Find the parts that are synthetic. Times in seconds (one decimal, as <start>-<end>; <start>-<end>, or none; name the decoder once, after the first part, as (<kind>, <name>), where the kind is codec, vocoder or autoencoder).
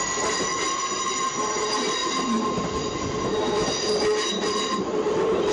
none